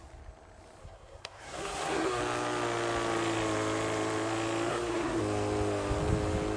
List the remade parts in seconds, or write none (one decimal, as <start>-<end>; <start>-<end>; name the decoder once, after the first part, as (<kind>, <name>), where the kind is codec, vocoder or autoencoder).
0.8-2.2 (codec, SNAC); 4.7-5.2